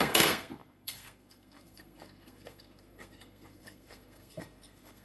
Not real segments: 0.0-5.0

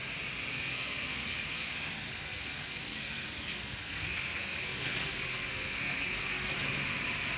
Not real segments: 0.5-1.7; 2.1-6.5

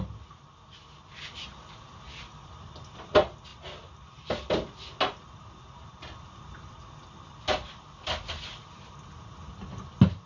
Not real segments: none

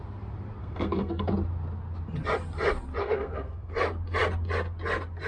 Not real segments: 0.6-1.3; 3.0-3.7

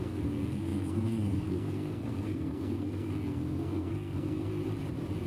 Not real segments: 0.0-4.5